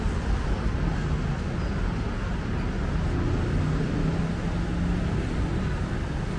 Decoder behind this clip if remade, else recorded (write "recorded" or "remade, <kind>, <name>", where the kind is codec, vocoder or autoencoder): recorded